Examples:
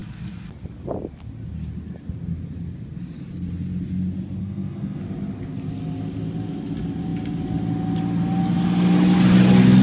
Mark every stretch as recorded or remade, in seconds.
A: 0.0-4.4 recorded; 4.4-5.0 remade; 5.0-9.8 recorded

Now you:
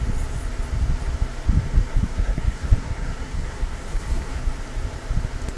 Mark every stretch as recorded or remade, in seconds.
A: 0.0-1.9 recorded; 1.9-4.4 remade; 4.4-5.6 recorded

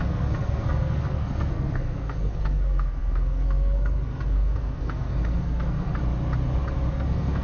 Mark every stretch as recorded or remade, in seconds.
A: 0.0-6.0 remade; 6.0-6.9 recorded; 6.9-7.4 remade

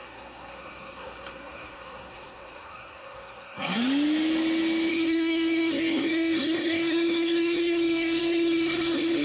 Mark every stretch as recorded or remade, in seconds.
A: 0.0-3.8 remade; 3.8-4.9 recorded; 4.9-9.2 remade

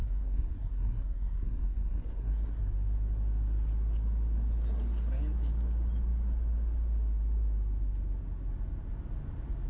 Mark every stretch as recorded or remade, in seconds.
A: 0.0-2.6 remade; 2.6-9.7 recorded

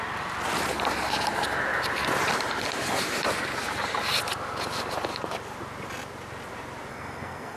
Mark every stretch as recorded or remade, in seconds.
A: 0.0-6.9 recorded; 6.9-7.6 remade

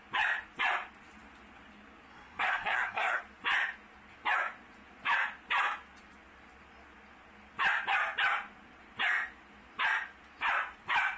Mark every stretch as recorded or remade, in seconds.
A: 0.0-2.1 recorded; 2.1-3.2 remade; 3.2-11.2 recorded

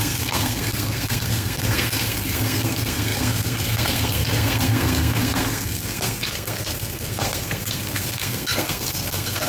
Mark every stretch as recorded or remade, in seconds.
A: 0.0-9.5 remade